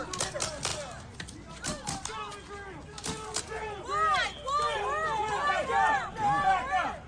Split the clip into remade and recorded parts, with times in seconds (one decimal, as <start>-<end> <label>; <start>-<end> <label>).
0.0-7.1 recorded